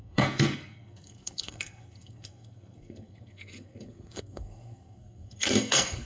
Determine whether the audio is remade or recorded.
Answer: remade